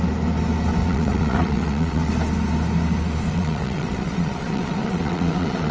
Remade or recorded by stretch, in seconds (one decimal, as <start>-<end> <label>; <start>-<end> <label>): 0.0-0.8 recorded; 0.8-2.1 remade; 2.1-3.3 recorded; 3.3-5.7 remade